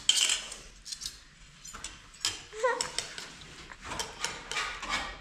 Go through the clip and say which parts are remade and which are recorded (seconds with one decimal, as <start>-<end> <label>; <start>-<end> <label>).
0.0-5.2 recorded